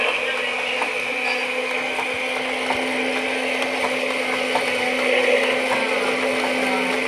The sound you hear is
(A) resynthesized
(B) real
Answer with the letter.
B